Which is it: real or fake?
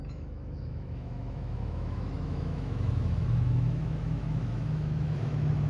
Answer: fake